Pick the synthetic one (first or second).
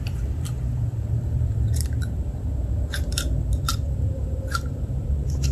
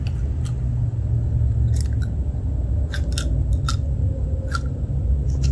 first